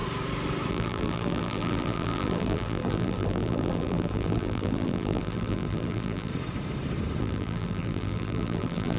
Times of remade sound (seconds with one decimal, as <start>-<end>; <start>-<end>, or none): 0.7-6.3; 7.2-9.0